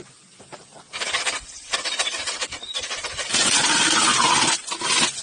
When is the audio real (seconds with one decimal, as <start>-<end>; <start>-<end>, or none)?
0.0-5.2